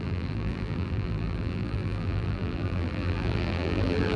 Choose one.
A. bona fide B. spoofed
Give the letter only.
B